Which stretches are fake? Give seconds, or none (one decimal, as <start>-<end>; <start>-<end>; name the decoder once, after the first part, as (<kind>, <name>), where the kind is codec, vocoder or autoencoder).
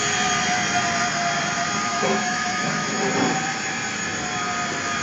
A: 1.9-3.0 (autoencoder, DAC-VAE)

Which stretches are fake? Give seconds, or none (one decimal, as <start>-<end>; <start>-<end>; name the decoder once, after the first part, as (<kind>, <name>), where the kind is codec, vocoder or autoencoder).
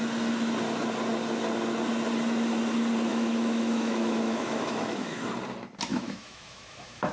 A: 3.1-5.3 (autoencoder, DAC-VAE); 5.9-7.1